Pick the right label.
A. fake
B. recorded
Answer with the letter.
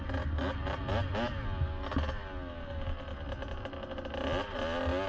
B